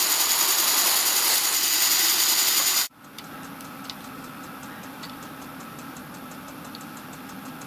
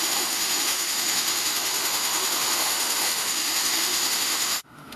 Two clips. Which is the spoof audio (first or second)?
second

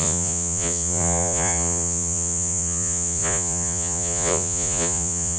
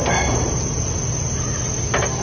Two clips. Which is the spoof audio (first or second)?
first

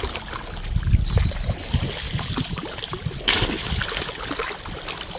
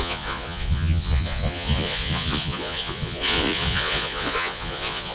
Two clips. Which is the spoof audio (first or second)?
second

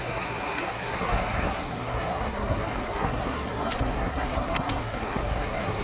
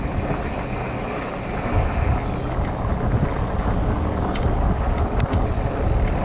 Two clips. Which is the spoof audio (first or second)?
first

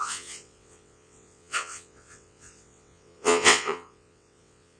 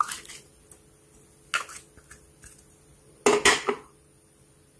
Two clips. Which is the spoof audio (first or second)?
first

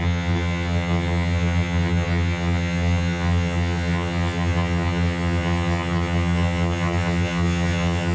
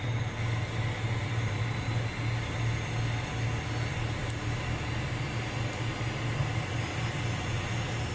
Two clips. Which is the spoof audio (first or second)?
first